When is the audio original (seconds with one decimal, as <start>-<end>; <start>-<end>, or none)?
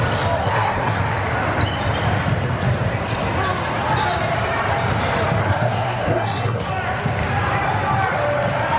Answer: 0.0-0.4; 1.0-5.4; 6.7-8.8